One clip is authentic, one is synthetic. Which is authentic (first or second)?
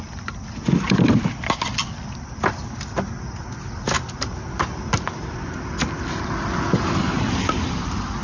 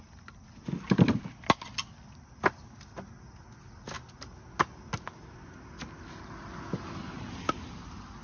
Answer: second